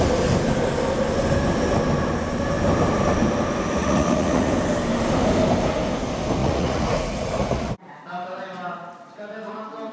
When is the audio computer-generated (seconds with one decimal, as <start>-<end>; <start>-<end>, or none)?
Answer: 3.8-4.5; 6.4-7.7